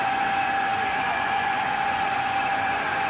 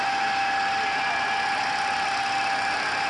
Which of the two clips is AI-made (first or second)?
first